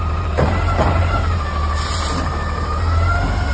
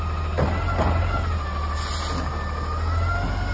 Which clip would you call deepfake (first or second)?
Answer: first